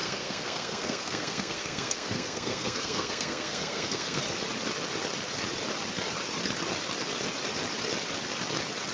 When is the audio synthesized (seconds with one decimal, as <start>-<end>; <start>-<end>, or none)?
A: 0.0-4.2